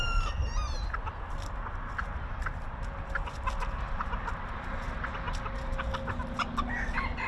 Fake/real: real